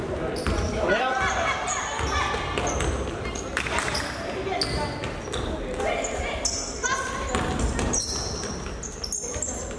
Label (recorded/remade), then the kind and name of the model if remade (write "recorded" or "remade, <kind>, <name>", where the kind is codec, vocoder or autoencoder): recorded